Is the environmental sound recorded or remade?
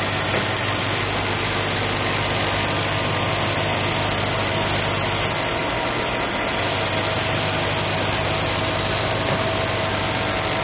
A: recorded